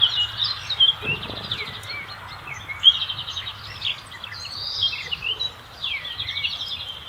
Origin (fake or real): real